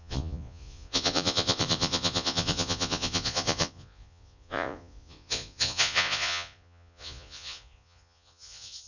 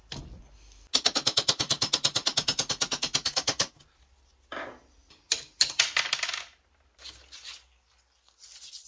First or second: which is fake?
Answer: first